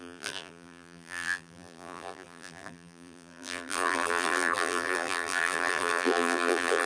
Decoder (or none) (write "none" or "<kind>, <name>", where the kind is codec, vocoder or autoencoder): vocoder, BigVGAN v2